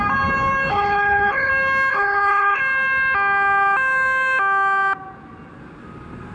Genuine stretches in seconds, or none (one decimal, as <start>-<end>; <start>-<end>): 0.0-0.7; 1.5-1.9; 2.6-6.3